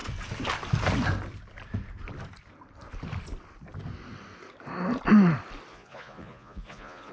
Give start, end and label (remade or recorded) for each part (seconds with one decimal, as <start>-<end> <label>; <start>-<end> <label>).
0.0-5.7 recorded; 5.7-7.1 remade